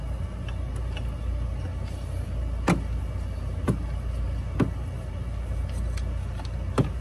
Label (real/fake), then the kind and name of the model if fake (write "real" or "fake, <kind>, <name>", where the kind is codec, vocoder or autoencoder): real